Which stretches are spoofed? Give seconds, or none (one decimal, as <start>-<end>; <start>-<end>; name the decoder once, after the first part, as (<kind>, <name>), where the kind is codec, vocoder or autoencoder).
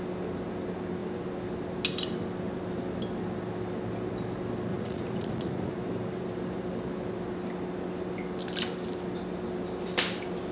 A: 4.7-5.7 (vocoder, Vocos)